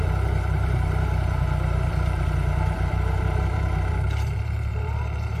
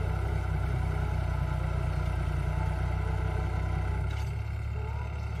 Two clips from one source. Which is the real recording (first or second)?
second